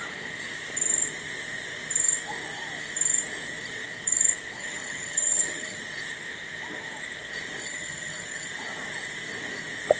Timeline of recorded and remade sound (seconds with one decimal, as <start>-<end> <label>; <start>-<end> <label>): 0.0-4.6 recorded; 4.6-5.8 remade; 5.8-7.6 recorded; 7.6-8.5 remade; 8.5-10.0 recorded